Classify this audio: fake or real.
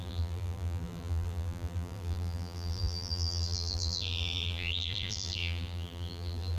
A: fake